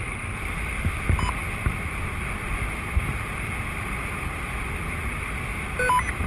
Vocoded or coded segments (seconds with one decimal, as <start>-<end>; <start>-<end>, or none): none